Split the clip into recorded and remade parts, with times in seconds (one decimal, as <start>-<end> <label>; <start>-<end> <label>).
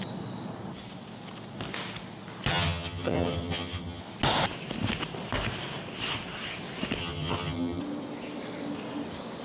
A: 0.0-2.5 recorded; 2.5-4.0 remade; 4.0-7.0 recorded; 7.0-7.8 remade; 7.8-9.4 recorded